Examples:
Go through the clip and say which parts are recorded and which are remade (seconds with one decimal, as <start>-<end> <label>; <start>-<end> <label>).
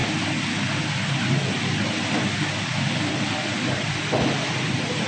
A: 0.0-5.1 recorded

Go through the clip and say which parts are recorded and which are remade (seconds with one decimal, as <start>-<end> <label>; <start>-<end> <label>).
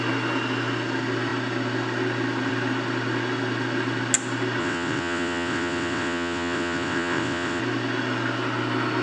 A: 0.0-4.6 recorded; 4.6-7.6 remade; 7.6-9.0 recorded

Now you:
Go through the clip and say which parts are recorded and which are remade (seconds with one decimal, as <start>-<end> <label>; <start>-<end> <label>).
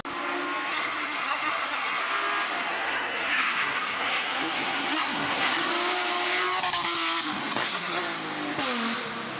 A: 0.0-0.7 recorded; 0.7-2.0 remade; 2.0-2.7 recorded; 2.7-5.7 remade; 5.7-7.4 recorded; 7.4-8.0 remade; 8.0-9.4 recorded